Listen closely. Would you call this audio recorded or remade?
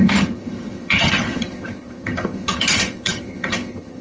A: remade